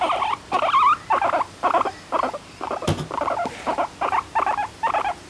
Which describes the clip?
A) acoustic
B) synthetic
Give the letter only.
A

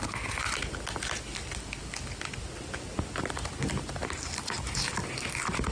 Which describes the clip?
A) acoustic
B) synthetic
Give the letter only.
A